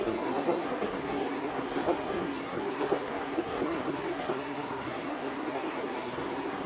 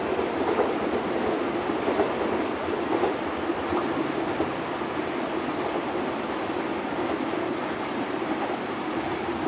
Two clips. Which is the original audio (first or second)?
second